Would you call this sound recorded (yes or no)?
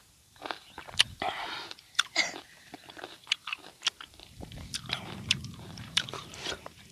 no